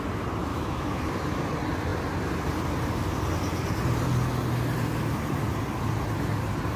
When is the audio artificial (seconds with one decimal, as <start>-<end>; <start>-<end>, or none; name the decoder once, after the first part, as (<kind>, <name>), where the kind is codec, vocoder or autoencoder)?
0.5-1.1 (autoencoder, DAC-VAE)

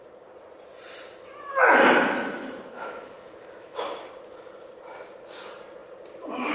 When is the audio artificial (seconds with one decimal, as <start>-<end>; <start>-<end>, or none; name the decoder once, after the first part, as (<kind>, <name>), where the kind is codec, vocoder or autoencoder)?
2.2-3.8 (autoencoder, DAC-VAE)

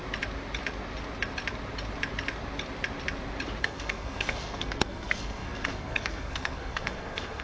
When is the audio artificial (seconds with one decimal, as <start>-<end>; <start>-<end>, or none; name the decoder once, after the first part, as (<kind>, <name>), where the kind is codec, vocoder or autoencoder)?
3.6-7.4 (codec, SNAC)

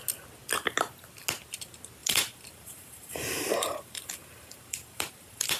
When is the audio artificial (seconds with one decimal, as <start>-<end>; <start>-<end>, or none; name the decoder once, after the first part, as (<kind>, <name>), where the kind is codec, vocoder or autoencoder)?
2.0-5.6 (vocoder, BigVGAN v2)

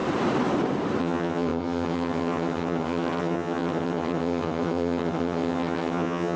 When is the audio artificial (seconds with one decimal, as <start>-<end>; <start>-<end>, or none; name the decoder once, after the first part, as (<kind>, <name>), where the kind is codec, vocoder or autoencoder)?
1.0-6.4 (vocoder, HiFi-GAN)

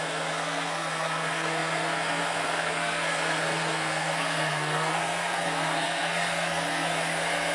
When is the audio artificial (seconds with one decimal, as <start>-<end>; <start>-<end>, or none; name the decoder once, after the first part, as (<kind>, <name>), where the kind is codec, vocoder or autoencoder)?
0.0-7.5 (codec, SNAC)

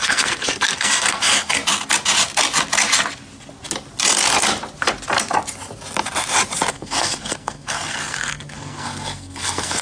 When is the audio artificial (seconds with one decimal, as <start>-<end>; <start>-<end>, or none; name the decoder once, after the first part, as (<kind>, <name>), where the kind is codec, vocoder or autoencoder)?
0.0-1.6 (codec, SNAC); 6.7-9.8